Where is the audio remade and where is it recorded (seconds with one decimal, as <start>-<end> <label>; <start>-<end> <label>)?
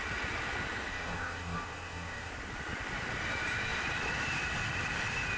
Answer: 0.0-0.9 recorded; 0.9-2.3 remade; 2.3-5.4 recorded